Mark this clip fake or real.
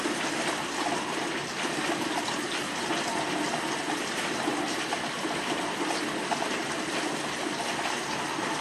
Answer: real